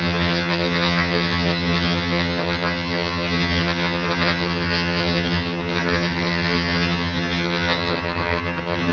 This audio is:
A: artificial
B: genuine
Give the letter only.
A